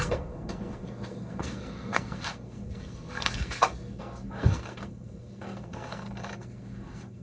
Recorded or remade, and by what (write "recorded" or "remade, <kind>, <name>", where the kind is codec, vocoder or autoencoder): remade, codec, SNAC